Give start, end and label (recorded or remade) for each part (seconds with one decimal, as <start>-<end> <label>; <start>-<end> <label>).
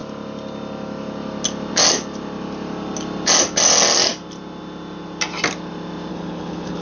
0.0-6.1 recorded; 6.1-6.8 remade